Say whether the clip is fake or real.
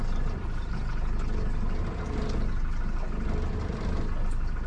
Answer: real